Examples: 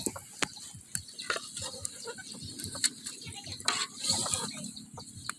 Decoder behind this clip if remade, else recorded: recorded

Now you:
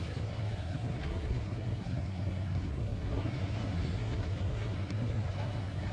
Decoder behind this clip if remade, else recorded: remade, codec, SNAC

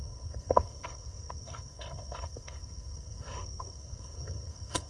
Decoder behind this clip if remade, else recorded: remade, codec, SNAC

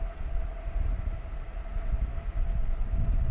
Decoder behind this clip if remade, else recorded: recorded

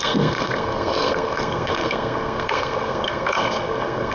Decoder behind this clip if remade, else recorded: remade, codec, SNAC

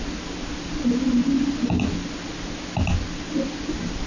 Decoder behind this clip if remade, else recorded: recorded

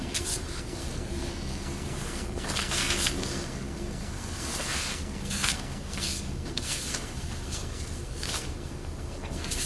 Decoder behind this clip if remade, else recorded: remade, codec, SNAC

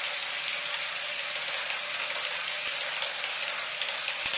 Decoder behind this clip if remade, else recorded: recorded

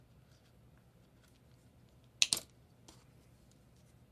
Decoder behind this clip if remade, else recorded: recorded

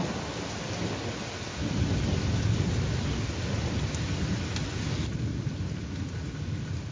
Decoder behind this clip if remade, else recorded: recorded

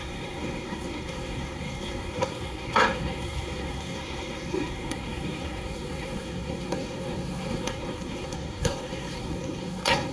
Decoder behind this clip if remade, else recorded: remade, codec, SNAC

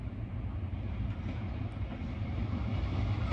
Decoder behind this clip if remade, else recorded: recorded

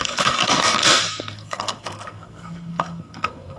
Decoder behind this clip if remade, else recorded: remade, codec, SNAC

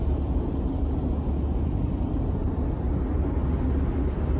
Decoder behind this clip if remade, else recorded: recorded